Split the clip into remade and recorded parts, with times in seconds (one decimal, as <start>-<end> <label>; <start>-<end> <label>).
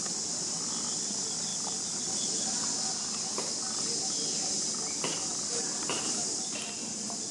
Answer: 0.0-7.3 recorded